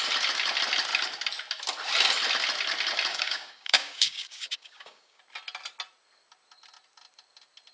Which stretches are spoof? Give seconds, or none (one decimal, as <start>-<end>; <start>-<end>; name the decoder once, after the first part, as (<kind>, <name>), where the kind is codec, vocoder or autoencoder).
3.1-5.2 (codec, DAC)